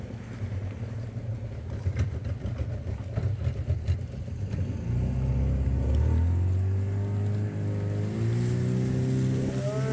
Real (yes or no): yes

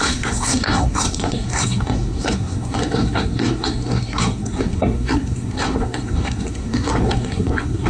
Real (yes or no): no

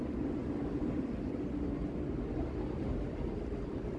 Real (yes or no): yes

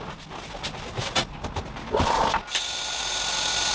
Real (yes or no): yes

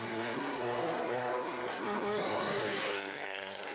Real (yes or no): no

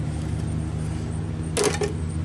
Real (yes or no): yes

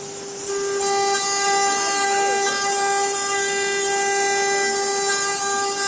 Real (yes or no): yes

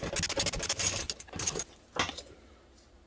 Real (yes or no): yes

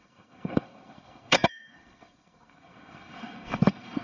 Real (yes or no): no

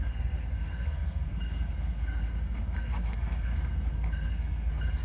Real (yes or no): no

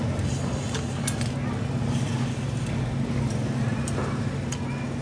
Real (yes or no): yes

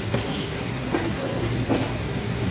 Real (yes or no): no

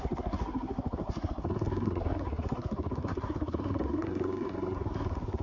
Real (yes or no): no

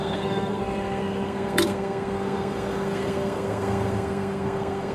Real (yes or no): no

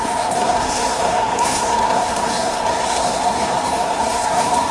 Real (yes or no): no